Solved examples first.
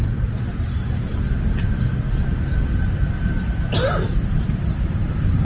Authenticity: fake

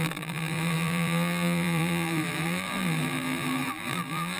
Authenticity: fake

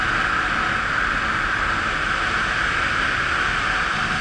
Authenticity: real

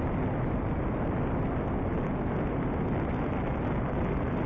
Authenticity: real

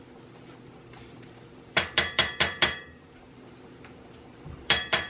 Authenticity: fake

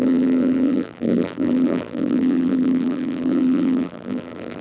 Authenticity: fake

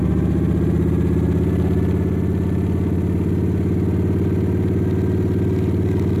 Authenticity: real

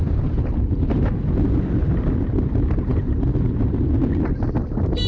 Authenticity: real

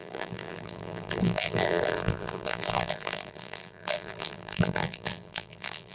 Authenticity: fake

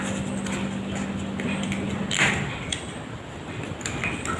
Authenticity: real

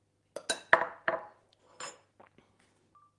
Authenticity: real